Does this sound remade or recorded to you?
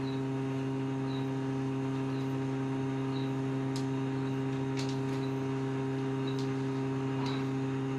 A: recorded